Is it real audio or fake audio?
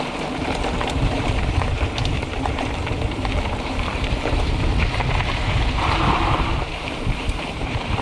fake